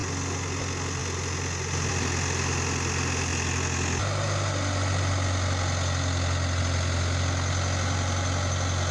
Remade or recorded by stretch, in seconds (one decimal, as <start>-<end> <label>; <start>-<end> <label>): 0.0-8.9 recorded